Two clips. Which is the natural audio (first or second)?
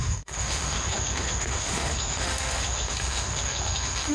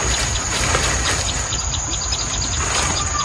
second